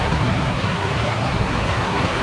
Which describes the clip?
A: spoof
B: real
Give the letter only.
A